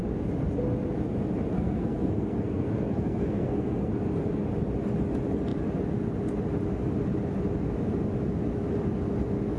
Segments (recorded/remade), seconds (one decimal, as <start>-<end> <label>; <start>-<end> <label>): 0.0-1.5 recorded; 1.5-3.9 remade; 3.9-9.6 recorded